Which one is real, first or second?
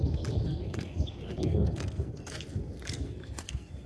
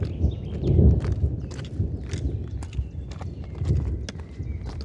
second